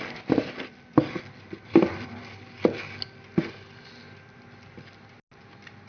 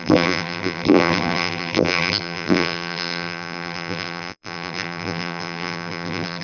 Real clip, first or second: first